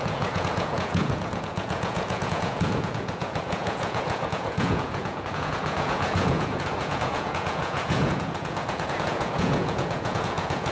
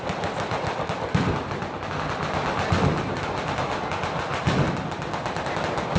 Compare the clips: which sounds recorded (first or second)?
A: second